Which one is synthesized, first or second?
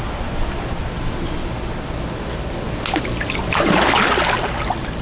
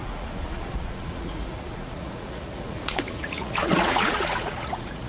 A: second